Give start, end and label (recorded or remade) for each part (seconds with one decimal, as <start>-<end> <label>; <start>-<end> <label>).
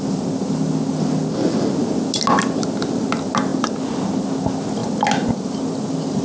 0.0-6.2 recorded